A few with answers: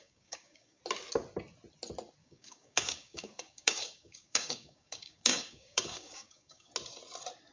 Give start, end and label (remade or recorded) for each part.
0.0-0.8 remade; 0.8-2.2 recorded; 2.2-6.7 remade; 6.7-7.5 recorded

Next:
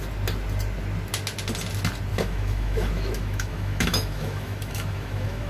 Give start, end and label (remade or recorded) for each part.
0.0-2.1 recorded; 2.1-5.5 remade

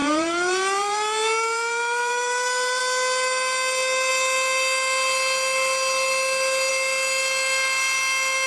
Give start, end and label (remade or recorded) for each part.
0.0-2.8 remade; 2.8-8.5 recorded

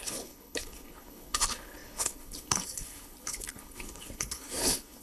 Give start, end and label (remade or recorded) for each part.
0.0-5.0 remade

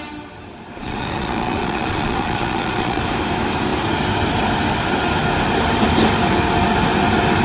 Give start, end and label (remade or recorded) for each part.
0.0-0.8 recorded; 0.8-3.0 remade; 3.0-7.4 recorded

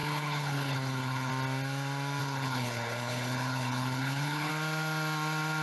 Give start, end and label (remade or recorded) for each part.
0.0-1.3 remade; 1.3-2.2 recorded; 2.2-4.5 remade; 4.5-5.6 recorded